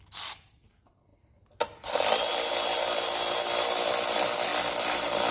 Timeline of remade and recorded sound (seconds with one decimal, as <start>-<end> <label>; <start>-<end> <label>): 0.0-1.1 recorded; 1.1-2.3 remade; 2.3-2.7 recorded; 2.7-4.1 remade; 4.1-5.3 recorded

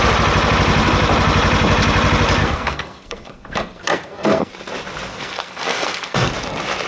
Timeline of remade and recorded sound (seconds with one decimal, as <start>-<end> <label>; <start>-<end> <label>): 0.0-2.4 recorded; 2.4-4.5 remade; 4.5-5.1 recorded; 5.1-6.3 remade; 6.3-6.9 recorded